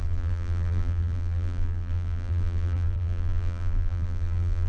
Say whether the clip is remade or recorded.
remade